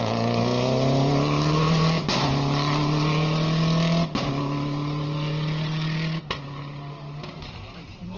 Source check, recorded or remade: recorded